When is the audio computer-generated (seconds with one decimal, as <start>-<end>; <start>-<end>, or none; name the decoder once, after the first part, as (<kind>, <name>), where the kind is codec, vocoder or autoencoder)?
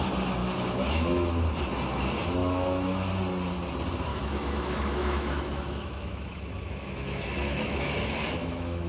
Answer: 0.4-1.3 (autoencoder, DAC-VAE); 2.4-3.1; 4.1-8.9